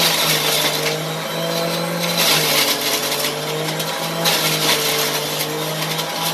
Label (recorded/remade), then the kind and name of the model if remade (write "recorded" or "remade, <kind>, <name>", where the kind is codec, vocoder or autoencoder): recorded